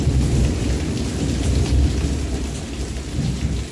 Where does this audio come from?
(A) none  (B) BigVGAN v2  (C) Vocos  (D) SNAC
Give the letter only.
A